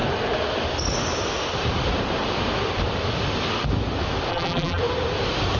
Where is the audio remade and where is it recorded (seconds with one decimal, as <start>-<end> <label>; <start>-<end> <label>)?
0.0-4.3 recorded; 4.3-4.8 remade; 4.8-5.6 recorded